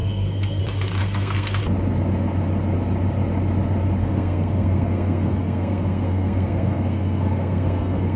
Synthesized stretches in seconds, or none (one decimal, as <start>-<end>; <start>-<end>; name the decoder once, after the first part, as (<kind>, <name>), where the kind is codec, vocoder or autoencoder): 0.0-0.6 (codec, SNAC); 1.0-1.6; 4.0-8.2